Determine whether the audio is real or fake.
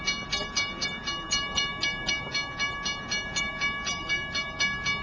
real